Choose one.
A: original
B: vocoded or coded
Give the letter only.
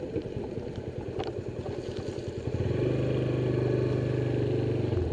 A